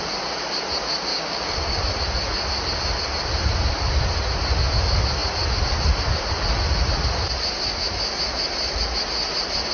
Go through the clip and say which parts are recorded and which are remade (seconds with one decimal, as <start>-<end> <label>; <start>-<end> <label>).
0.0-1.1 recorded; 1.1-1.8 remade; 1.8-9.7 recorded